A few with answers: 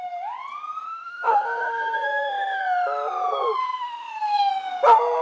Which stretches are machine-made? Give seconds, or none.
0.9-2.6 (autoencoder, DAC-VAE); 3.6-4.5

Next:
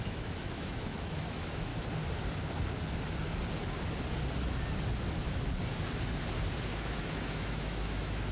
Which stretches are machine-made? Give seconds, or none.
0.0-1.7 (autoencoder, DAC-VAE); 6.7-8.3

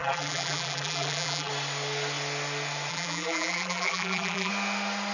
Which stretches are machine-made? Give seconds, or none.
0.0-1.5 (vocoder, BigVGAN v2); 2.9-4.5